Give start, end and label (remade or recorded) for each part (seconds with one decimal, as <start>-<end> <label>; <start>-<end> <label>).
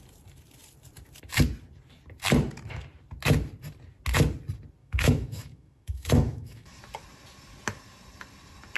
0.0-4.8 recorded; 4.8-6.8 remade; 6.8-8.8 recorded